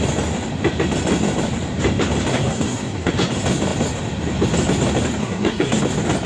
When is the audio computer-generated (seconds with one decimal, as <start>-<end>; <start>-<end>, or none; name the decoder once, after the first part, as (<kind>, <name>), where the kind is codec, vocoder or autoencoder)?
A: 2.3-3.1 (codec, SNAC); 5.2-5.8

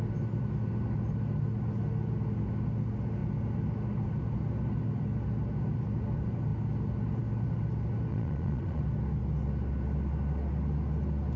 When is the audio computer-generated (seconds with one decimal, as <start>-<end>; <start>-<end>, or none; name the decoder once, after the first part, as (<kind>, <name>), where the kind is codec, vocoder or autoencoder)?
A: 8.1-8.8 (vocoder, Vocos)

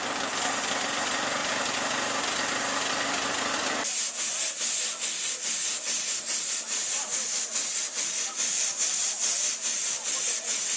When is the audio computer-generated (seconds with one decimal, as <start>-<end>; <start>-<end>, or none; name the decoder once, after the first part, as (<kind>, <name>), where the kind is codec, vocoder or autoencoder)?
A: none

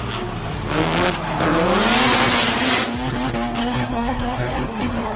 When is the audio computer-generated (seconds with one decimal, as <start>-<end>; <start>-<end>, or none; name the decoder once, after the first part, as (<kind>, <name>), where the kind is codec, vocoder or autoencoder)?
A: 3.6-5.2 (codec, SNAC)

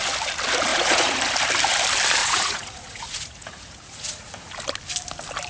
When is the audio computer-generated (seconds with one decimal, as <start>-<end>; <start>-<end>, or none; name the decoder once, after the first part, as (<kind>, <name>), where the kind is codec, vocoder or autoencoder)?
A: 0.7-1.2 (vocoder, Vocos); 2.2-4.5

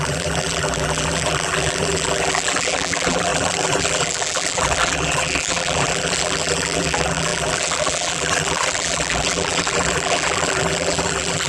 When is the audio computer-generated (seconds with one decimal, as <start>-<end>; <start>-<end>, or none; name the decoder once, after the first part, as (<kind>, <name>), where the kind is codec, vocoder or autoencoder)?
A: 0.0-11.5 (vocoder, BigVGAN v2)

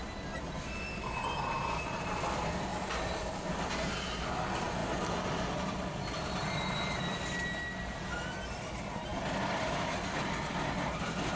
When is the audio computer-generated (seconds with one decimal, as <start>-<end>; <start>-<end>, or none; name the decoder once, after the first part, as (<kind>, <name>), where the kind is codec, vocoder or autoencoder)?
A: 2.7-3.7 (vocoder, BigVGAN v2); 4.8-7.0; 9.1-9.8